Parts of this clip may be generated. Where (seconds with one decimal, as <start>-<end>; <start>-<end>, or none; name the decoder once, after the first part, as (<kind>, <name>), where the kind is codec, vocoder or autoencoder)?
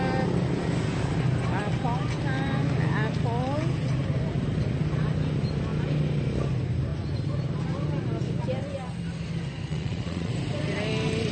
9.7-10.3 (vocoder, Vocos)